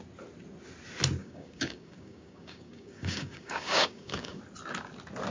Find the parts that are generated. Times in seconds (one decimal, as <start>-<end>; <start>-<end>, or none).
1.2-4.4